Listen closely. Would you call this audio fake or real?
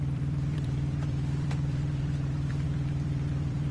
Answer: fake